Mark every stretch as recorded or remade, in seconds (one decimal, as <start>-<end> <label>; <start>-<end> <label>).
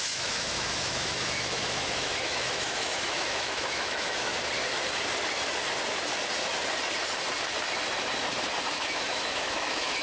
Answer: 0.0-4.3 remade; 4.3-8.7 recorded; 8.7-10.0 remade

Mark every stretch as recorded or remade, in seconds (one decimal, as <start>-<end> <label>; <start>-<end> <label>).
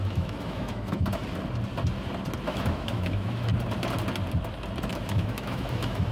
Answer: 0.0-1.2 remade; 1.2-2.5 recorded; 2.5-3.5 remade; 3.5-4.9 recorded; 4.9-6.1 remade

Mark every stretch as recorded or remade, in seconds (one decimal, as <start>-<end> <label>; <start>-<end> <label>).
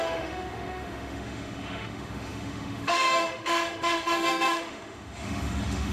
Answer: 0.0-5.9 remade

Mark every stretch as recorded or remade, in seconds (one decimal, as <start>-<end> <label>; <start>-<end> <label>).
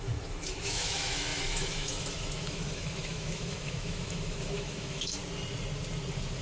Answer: 0.0-5.2 remade; 5.2-6.4 recorded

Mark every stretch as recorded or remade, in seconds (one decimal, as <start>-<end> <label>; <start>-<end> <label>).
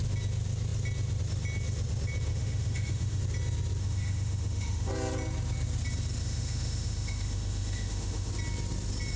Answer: 0.0-2.3 recorded; 2.3-3.2 remade; 3.2-3.8 recorded; 3.8-4.9 remade; 4.9-6.2 recorded; 6.2-8.3 remade; 8.3-9.2 recorded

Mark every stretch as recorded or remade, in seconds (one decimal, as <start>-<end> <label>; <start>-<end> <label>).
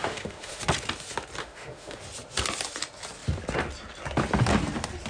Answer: 0.0-0.6 remade; 0.6-1.4 recorded; 1.4-2.0 remade; 2.0-5.1 recorded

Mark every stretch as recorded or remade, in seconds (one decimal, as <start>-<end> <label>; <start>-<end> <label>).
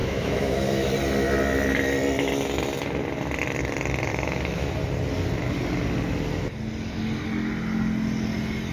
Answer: 0.0-0.9 remade; 0.9-4.1 recorded; 4.1-4.7 remade; 4.7-8.7 recorded